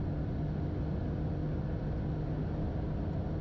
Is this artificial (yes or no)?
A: no